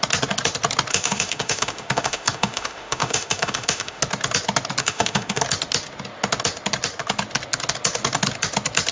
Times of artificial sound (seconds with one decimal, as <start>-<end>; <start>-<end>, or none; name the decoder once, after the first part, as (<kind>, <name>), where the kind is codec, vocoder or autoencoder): 0.9-4.0 (autoencoder, DAC-VAE); 4.8-5.4